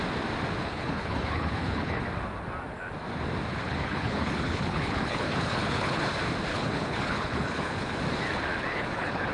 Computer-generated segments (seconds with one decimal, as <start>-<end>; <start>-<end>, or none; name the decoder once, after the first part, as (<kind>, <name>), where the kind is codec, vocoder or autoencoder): 0.6-2.0 (codec, HILCodec); 3.5-6.1; 6.5-8.0; 8.7-9.3